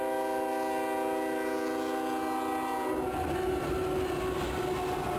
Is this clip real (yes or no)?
yes